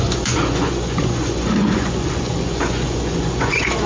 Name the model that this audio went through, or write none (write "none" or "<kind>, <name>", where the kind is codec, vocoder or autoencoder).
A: vocoder, Vocos